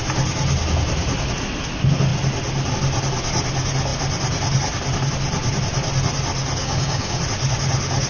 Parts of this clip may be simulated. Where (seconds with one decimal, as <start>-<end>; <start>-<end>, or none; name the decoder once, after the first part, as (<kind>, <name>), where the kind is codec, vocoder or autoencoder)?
6.6-7.2 (codec, DAC)